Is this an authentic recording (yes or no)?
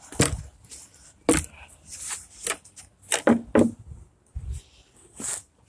yes